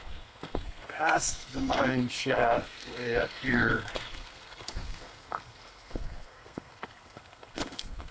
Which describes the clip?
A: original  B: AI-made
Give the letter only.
B